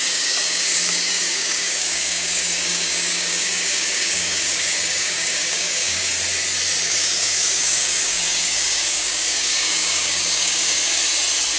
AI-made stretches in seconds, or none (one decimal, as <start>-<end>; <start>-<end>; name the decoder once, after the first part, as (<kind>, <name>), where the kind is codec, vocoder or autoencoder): 0.0-6.1 (codec, DAC); 6.8-11.0